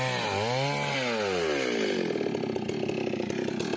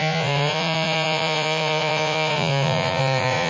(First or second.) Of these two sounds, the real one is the first